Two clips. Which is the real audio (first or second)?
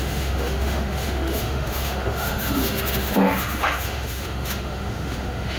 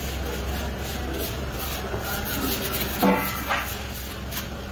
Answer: second